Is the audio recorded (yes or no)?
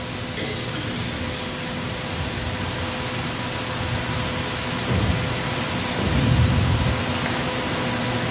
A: yes